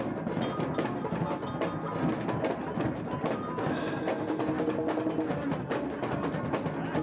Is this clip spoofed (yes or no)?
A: no